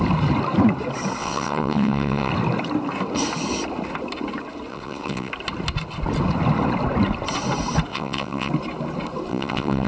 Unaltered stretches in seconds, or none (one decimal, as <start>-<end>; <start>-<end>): 0.0-1.2; 2.3-4.7; 5.3-7.9; 8.5-9.3